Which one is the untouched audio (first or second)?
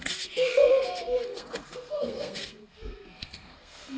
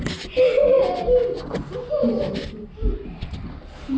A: second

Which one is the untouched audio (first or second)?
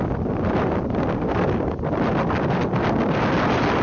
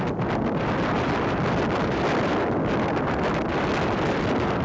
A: second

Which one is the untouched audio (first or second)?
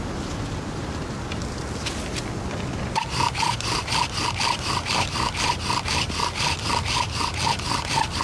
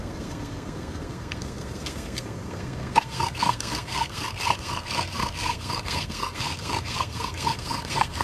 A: first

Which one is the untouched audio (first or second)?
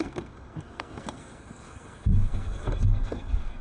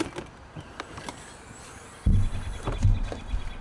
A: second